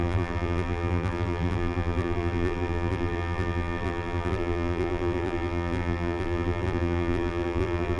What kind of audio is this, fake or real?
fake